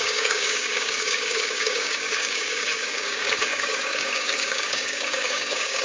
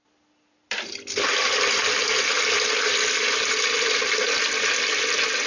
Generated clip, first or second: first